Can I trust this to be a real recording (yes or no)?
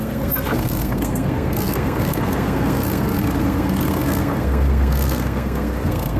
no